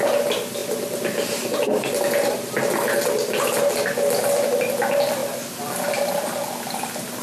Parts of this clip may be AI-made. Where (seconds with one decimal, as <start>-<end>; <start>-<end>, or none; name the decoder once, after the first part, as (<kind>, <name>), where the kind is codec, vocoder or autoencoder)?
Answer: none